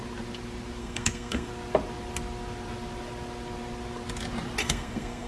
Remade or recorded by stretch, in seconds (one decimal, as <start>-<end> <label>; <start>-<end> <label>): 0.0-0.8 recorded; 0.8-1.5 remade; 1.5-4.6 recorded; 4.6-5.3 remade